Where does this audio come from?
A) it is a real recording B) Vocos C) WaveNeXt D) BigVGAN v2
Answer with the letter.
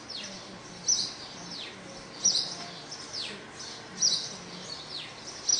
A